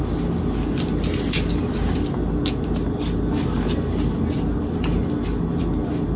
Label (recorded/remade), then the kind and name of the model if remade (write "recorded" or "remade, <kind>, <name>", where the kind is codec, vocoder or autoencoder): recorded